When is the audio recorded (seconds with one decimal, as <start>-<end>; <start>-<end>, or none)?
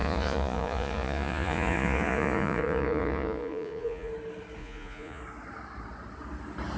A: 4.1-4.6; 5.2-6.8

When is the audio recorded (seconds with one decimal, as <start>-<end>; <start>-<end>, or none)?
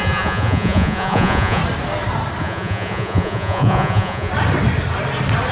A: 1.6-2.4; 4.3-5.5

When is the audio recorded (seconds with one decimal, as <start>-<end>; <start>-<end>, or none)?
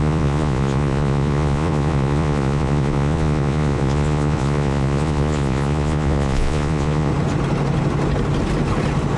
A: 7.1-9.2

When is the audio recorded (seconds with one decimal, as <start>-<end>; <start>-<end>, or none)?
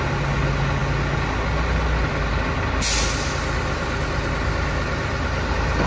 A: 0.0-5.9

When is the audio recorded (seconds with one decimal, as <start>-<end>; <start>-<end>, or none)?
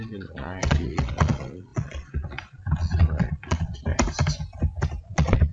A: 3.9-5.0